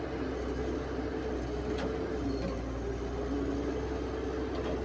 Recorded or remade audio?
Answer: recorded